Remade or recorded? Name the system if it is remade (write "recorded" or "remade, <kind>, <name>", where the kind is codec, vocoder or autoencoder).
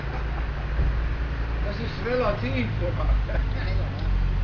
recorded